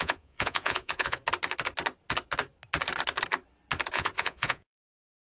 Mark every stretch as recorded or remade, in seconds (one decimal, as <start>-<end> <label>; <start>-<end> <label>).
0.0-1.2 remade; 1.2-3.9 recorded; 3.9-5.3 remade